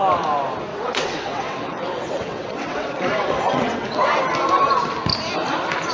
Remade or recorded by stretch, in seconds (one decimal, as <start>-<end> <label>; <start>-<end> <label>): 0.0-0.7 recorded; 0.7-4.2 remade; 4.2-5.9 recorded